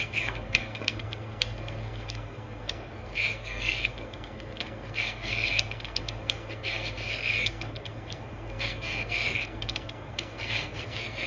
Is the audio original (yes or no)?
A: no